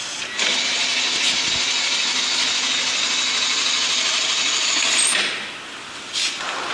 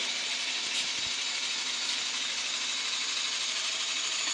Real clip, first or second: first